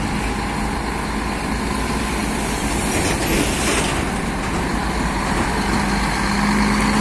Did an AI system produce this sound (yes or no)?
no